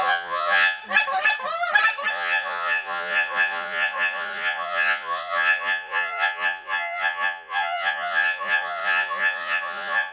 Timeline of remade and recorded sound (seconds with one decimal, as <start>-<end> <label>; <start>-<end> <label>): 0.0-0.8 remade; 0.8-2.1 recorded; 2.1-10.1 remade